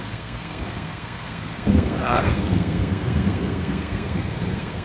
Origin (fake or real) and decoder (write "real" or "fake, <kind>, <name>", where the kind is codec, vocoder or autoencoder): fake, codec, SNAC